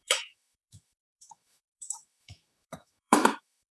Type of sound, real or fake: fake